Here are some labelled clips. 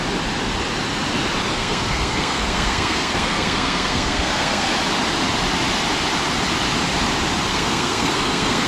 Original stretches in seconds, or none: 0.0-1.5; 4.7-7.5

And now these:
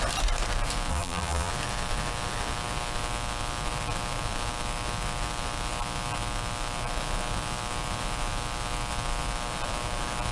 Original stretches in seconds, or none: 0.0-0.9; 1.5-10.3

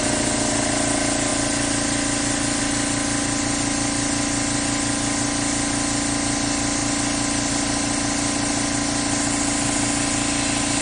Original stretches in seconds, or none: 0.0-10.8

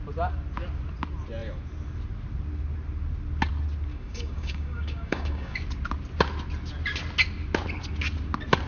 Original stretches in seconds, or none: 0.0-3.9; 5.6-8.7

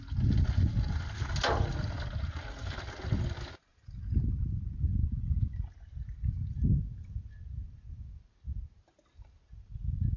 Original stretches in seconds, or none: 0.0-10.2

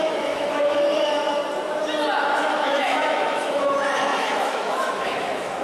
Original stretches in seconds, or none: 1.4-2.2

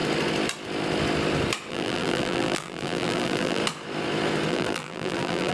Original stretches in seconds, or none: 0.0-1.7; 3.6-4.5

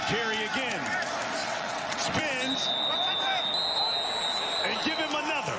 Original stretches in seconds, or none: 0.0-1.4; 2.2-5.6